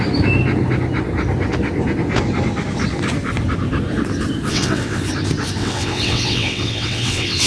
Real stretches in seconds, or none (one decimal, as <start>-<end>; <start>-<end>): 0.0-4.5; 5.0-5.6